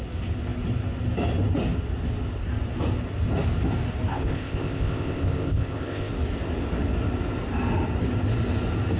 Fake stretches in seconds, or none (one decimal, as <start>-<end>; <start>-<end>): 4.1-6.1